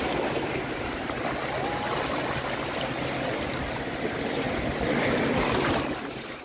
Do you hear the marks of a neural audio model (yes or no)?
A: no